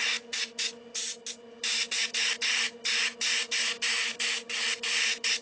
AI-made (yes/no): no